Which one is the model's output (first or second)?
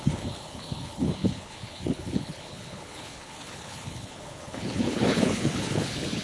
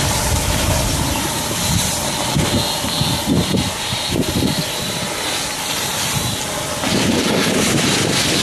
first